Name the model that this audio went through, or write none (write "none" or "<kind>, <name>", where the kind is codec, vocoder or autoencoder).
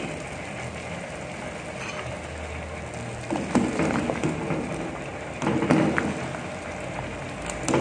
none